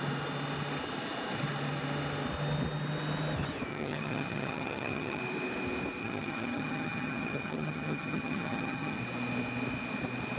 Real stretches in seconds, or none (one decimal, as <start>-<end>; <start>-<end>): 0.0-3.7; 5.2-6.0; 9.0-10.4